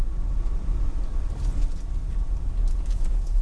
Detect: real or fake real